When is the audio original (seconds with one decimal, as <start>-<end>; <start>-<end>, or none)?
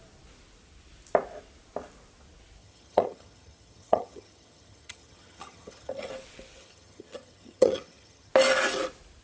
0.0-2.6; 6.1-6.6; 8.3-9.2